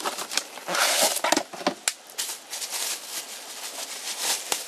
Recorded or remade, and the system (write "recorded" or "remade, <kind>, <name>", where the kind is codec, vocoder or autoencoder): recorded